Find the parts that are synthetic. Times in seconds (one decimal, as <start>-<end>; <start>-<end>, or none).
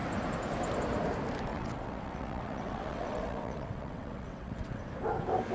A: 1.5-4.8